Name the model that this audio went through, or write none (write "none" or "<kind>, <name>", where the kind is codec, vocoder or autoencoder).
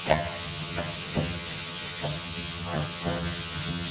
vocoder, HiFi-GAN